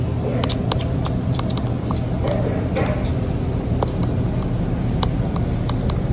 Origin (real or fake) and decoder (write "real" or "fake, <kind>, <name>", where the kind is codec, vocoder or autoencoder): real